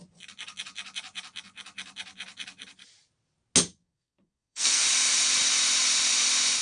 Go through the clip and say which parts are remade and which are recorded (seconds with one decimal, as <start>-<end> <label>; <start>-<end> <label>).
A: 0.0-3.8 recorded; 3.8-4.8 remade; 4.8-6.6 recorded